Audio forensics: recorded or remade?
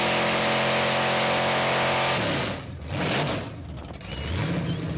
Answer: recorded